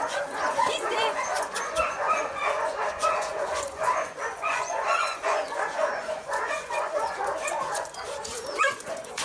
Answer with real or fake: fake